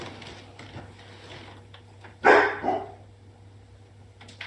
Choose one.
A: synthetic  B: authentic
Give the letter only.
B